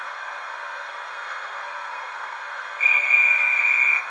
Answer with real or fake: fake